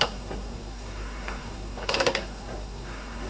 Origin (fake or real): fake